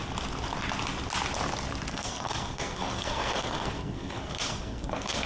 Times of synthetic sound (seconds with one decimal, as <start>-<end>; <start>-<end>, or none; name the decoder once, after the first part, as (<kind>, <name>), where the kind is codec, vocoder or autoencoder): 1.9-5.3 (codec, SNAC)